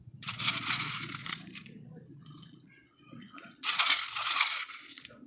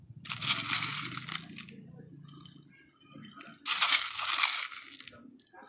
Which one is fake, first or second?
first